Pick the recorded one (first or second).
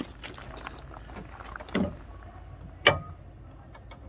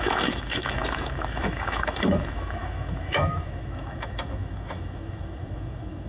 first